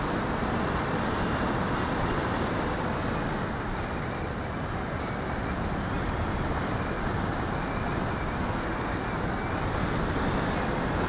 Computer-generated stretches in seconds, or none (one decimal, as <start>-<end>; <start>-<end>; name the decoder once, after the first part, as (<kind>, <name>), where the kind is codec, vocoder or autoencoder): 8.4-9.0 (codec, SNAC)